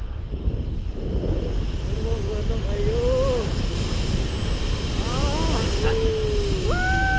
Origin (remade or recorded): recorded